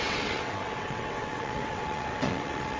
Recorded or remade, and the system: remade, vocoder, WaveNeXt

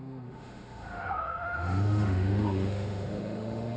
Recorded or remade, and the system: remade, autoencoder, DAC-VAE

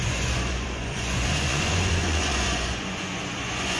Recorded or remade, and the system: remade, vocoder, Vocos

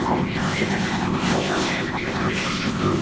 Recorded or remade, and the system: remade, codec, ZipCodec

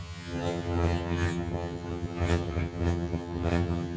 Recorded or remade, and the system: remade, vocoder, HiFi-GAN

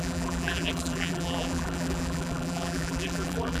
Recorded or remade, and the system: remade, vocoder, BigVGAN v2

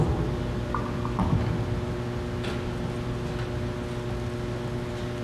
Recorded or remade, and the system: recorded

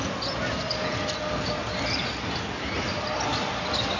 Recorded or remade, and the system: recorded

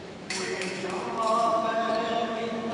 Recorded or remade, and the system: remade, autoencoder, DAC-VAE